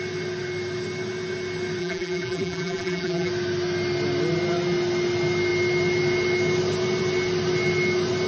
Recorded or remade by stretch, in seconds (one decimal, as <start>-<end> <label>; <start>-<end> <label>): 0.0-1.8 recorded; 1.8-3.3 remade; 3.3-8.3 recorded